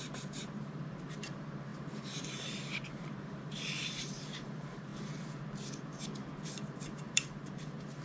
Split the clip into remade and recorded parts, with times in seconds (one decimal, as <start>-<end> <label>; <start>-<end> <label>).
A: 0.0-4.9 remade; 4.9-5.8 recorded; 5.8-8.0 remade